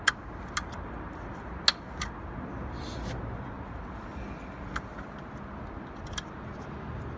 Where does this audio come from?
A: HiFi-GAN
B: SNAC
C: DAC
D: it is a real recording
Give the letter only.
D